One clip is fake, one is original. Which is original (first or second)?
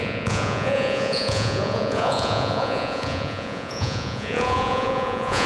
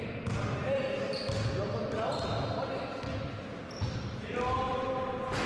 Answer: second